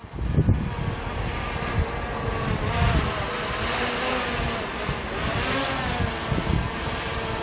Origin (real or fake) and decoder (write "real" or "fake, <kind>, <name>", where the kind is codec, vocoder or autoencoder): real